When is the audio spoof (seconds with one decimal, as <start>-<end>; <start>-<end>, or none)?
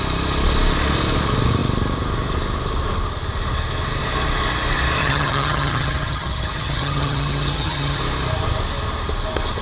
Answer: 5.0-8.0